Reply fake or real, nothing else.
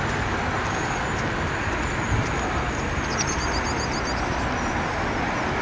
real